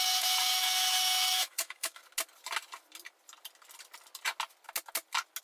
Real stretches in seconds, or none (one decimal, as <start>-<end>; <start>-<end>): 2.0-5.4